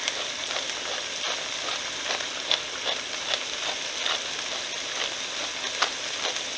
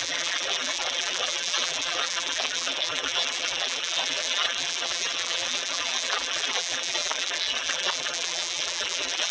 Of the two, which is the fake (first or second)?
second